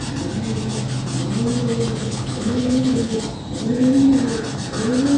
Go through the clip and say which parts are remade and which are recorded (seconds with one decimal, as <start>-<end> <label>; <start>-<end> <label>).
0.0-2.0 recorded; 2.0-3.2 remade; 3.2-5.2 recorded